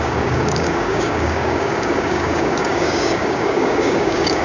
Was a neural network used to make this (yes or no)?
yes